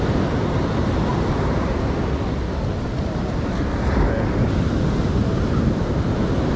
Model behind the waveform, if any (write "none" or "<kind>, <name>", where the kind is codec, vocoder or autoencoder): none